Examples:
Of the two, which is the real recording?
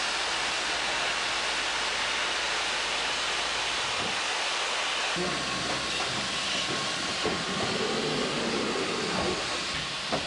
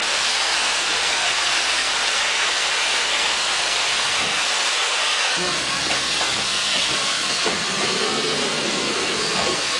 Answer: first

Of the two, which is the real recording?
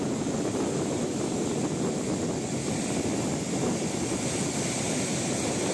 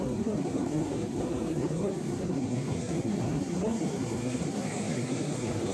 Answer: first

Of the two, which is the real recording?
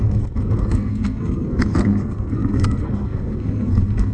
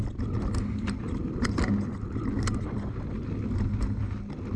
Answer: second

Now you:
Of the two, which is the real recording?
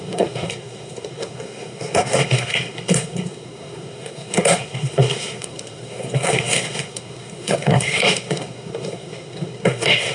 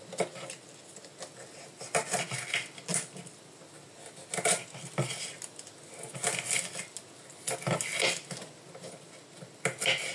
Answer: second